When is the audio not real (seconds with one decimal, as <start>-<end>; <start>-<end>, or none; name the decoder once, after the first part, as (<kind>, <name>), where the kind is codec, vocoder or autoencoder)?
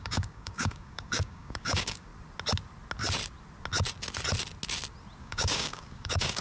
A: 0.0-2.1 (codec, DAC); 5.2-6.4